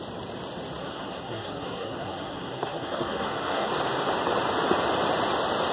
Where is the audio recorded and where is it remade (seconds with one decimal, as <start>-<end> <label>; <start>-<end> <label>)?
0.0-0.8 recorded; 0.8-3.7 remade; 3.7-5.7 recorded